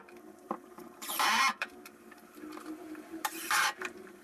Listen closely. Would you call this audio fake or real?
fake